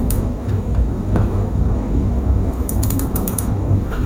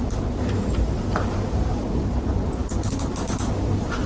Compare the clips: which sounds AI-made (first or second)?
first